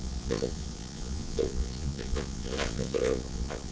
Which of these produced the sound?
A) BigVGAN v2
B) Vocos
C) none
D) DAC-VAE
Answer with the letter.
B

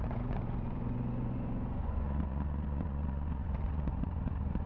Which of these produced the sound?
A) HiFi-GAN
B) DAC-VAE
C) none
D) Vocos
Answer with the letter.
D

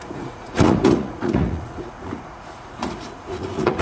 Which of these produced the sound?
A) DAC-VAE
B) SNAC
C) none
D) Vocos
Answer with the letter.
D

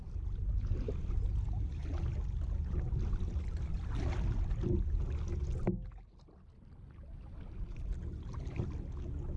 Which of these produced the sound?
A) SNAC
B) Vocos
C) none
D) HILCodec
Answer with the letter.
C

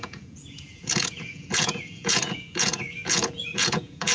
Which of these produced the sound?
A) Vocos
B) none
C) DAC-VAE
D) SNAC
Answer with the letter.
A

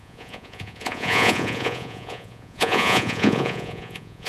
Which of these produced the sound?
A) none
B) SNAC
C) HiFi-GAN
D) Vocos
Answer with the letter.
D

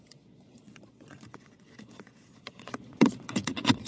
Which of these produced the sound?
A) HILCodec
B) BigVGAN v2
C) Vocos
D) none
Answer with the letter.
C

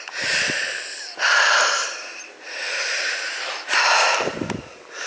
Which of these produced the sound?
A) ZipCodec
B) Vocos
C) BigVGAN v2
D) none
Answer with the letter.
D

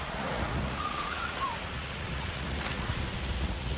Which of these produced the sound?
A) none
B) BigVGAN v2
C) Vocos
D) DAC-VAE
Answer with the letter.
C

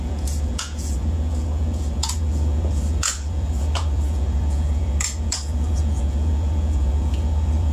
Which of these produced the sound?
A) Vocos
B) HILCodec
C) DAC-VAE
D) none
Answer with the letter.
A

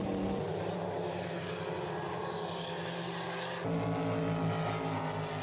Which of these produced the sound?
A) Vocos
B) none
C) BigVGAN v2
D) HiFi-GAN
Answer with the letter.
B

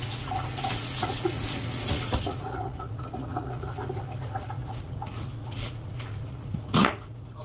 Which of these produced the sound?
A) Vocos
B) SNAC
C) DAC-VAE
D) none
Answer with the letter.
A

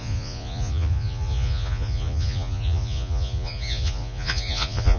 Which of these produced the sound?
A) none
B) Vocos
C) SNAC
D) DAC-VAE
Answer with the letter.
B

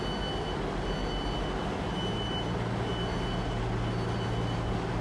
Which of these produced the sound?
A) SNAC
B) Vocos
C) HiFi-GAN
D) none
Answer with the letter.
D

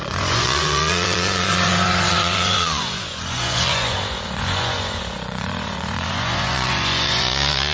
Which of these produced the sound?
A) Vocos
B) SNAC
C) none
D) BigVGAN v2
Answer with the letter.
A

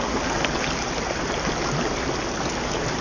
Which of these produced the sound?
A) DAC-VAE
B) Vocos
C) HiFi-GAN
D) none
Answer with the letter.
D